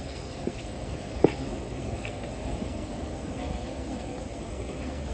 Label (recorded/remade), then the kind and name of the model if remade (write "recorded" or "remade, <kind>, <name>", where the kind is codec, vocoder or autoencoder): remade, codec, SNAC